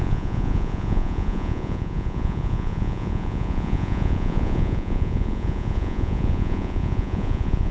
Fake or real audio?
fake